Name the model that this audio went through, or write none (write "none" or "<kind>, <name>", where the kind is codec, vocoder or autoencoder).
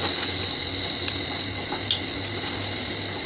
none